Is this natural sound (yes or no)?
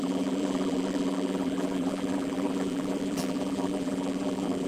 no